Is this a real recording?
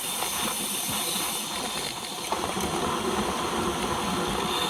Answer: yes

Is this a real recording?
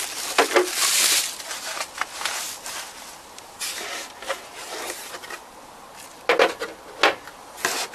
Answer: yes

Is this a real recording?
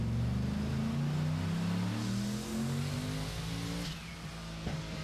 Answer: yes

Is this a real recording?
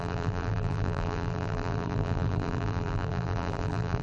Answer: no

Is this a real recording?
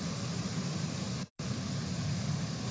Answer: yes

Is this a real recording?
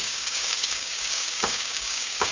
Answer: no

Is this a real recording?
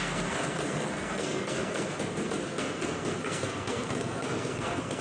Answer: no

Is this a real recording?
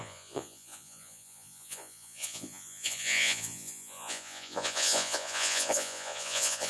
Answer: no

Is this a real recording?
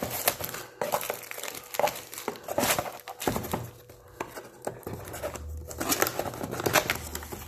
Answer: yes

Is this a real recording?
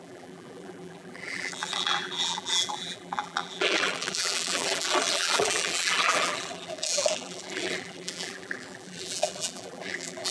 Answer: no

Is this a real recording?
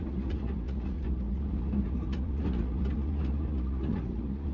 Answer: no